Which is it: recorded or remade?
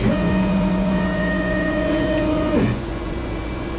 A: remade